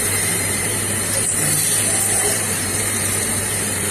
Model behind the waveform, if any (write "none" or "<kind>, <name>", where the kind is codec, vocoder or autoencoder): vocoder, BigVGAN v2